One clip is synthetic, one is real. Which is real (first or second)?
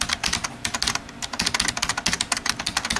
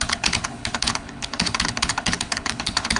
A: first